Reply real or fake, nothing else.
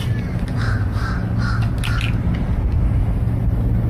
real